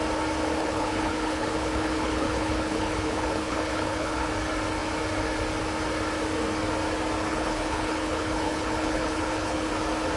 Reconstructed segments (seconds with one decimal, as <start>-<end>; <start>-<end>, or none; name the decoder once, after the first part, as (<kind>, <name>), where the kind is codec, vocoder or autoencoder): 0.6-4.3 (codec, HILCodec); 7.3-9.7